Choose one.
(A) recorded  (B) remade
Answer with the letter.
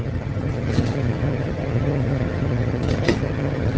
B